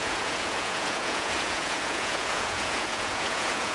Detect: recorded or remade remade